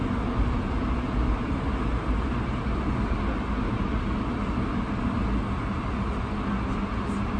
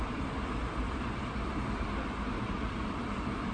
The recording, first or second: first